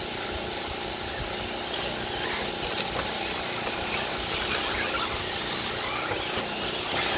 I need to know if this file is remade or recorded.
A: recorded